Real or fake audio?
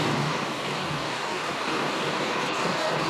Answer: fake